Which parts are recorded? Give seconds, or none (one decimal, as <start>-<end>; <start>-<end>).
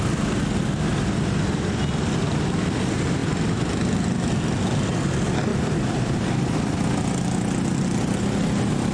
0.0-5.5; 6.4-8.9